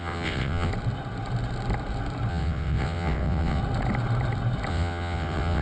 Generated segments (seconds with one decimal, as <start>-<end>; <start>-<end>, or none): 0.0-0.7; 2.3-3.6; 4.7-5.6